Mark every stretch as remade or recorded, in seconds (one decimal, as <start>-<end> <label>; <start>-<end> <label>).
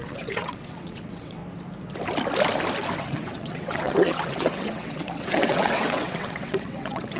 0.0-1.4 remade; 1.4-3.0 recorded; 3.0-7.2 remade